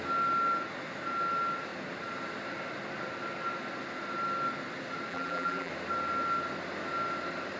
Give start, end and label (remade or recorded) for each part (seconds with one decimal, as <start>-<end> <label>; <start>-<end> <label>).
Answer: 0.0-5.1 recorded; 5.1-5.7 remade; 5.7-7.6 recorded